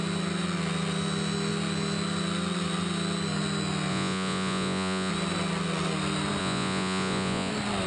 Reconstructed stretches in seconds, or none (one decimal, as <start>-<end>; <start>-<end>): 3.9-5.1; 6.4-7.5